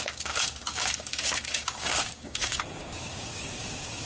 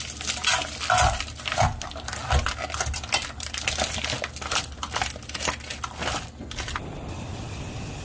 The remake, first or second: first